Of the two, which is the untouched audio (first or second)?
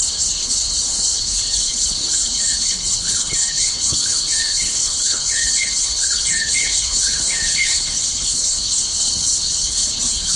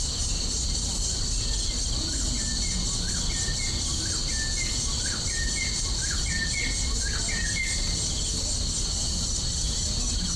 second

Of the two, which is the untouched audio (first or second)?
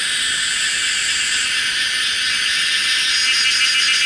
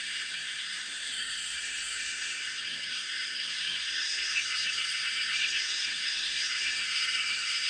first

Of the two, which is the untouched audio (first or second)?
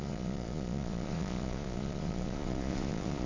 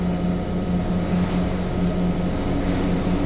second